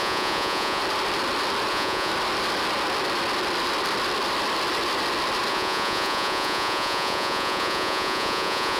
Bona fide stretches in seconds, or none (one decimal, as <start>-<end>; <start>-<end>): 0.8-1.7; 2.1-5.5